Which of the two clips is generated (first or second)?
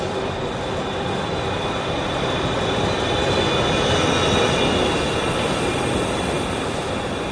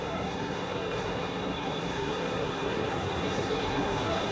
second